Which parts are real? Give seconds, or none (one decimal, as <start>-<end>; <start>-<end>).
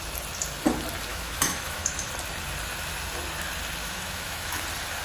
0.0-1.1; 2.1-3.8; 4.6-5.0